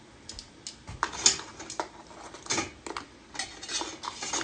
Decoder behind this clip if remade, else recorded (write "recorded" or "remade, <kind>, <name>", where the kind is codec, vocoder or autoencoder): recorded